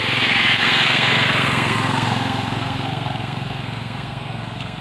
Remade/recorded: remade